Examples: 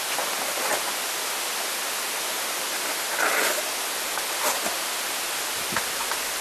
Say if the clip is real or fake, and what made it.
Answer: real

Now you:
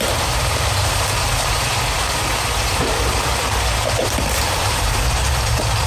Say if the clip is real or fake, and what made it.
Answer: fake, vocoder, BigVGAN v2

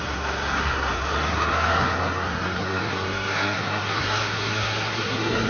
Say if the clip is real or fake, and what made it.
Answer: fake, codec, SNAC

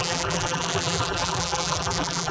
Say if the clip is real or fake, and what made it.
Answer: fake, vocoder, BigVGAN v2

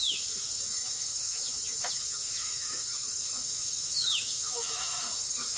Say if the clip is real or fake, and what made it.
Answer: fake, autoencoder, DAC-VAE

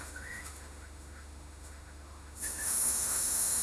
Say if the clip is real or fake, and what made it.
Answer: fake, autoencoder, DAC-VAE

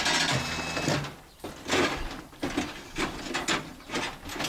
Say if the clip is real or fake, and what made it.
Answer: real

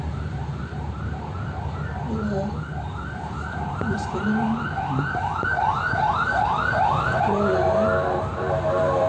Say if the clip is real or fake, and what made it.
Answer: fake, vocoder, BigVGAN v2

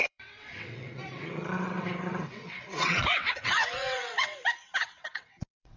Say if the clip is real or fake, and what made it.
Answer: fake, vocoder, WaveNeXt